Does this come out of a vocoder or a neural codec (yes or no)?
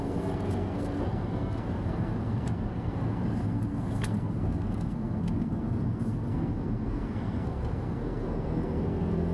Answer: yes